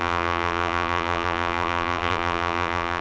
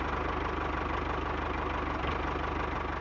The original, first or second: second